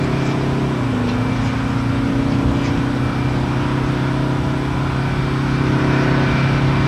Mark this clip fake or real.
real